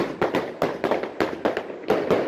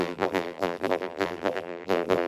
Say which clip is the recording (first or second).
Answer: first